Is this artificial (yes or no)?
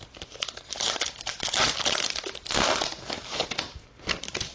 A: yes